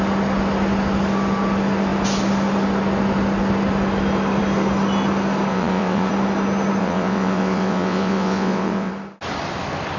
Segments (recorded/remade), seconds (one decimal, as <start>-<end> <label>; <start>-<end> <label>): 0.0-5.5 recorded; 5.5-6.1 remade; 6.1-6.8 recorded; 6.8-8.9 remade; 8.9-10.0 recorded